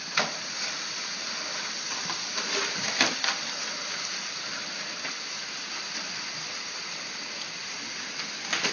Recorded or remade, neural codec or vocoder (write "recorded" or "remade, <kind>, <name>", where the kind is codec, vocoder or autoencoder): remade, vocoder, BigVGAN v2